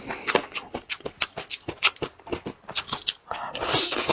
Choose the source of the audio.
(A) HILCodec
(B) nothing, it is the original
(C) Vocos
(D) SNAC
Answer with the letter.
B